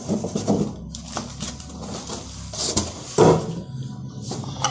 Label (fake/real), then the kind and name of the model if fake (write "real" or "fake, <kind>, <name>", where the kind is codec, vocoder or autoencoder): real